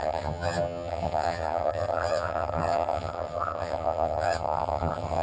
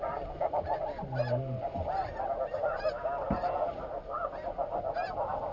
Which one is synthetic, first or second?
first